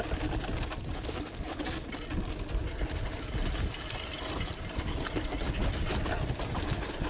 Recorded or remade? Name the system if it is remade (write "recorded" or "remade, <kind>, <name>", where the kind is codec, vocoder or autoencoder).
recorded